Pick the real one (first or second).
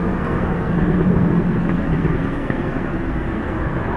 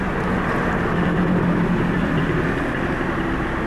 second